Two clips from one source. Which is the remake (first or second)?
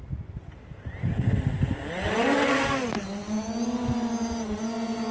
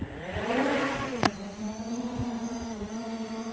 second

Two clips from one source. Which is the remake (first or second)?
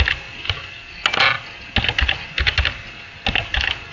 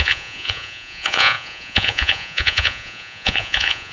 second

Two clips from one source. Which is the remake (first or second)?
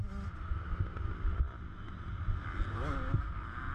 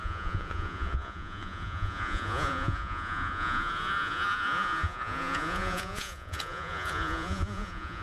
second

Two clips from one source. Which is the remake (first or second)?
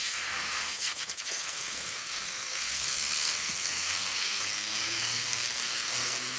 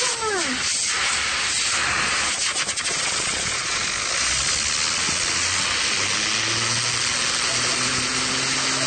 first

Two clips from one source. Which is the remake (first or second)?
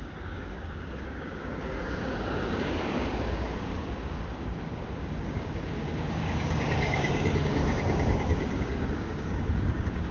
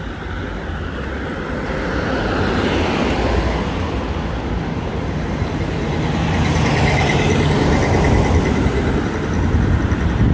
first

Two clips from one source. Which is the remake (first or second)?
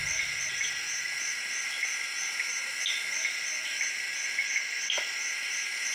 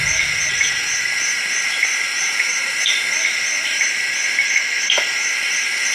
second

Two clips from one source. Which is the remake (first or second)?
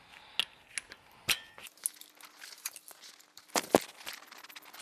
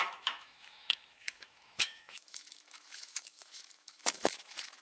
second